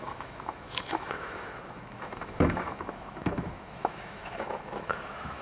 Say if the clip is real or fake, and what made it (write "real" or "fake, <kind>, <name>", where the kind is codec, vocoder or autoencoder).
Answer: fake, autoencoder, DAC-VAE